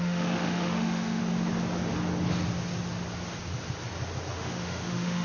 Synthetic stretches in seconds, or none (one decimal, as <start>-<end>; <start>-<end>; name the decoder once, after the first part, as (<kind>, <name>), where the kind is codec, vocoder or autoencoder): 0.0-1.2 (autoencoder, DAC-VAE); 4.3-5.2